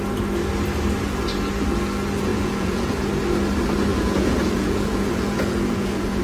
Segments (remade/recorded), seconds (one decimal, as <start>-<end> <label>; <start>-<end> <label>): 0.0-2.3 recorded; 2.3-2.9 remade; 2.9-3.9 recorded; 3.9-6.2 remade